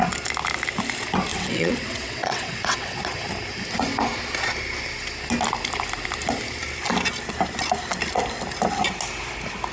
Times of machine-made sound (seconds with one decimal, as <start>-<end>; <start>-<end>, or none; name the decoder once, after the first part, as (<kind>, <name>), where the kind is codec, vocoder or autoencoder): 1.3-3.0 (vocoder, WaveNeXt)